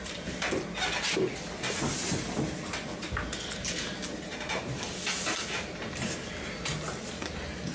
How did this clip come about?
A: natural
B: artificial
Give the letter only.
A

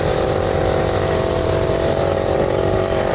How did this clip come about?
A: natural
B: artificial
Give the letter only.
B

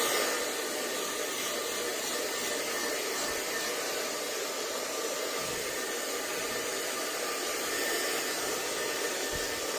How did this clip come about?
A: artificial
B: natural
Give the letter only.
B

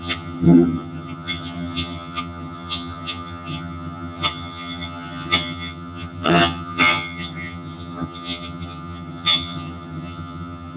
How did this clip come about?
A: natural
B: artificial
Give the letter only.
B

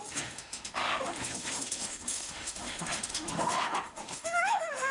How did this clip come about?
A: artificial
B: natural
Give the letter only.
A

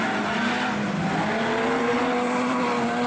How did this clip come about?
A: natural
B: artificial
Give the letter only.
A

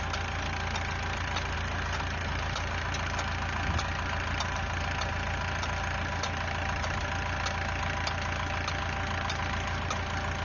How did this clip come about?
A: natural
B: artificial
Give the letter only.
A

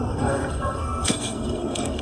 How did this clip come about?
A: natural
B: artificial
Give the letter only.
B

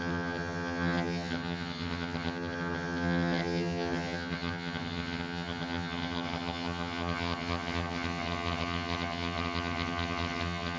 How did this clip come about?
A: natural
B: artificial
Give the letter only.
B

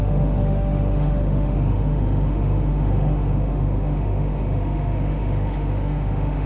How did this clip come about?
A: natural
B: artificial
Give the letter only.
B